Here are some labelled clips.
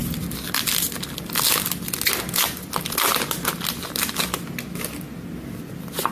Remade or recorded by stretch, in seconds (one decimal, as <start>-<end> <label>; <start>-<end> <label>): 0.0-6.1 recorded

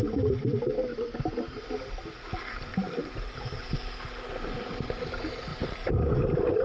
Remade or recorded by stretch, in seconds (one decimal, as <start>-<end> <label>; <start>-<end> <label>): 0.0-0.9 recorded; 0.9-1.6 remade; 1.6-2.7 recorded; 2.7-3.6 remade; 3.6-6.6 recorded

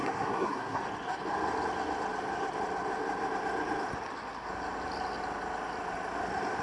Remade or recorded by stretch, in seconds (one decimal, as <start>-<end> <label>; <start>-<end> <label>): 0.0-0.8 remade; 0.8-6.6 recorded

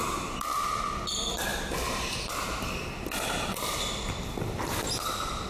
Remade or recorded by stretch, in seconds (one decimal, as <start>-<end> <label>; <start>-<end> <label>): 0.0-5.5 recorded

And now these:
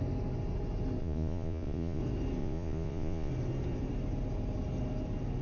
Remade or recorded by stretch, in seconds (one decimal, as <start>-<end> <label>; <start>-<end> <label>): 0.0-1.0 recorded; 1.0-2.0 remade; 2.0-2.4 recorded; 2.4-3.3 remade; 3.3-5.4 recorded

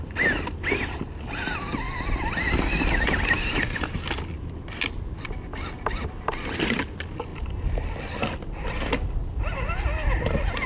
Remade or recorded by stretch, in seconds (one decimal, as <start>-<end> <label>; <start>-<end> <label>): 0.0-10.7 recorded

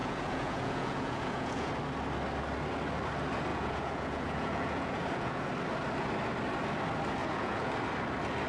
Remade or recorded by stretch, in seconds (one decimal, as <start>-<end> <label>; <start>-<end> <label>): 0.0-1.7 remade; 1.7-3.5 recorded; 3.5-5.4 remade; 5.4-7.2 recorded; 7.2-7.7 remade; 7.7-8.5 recorded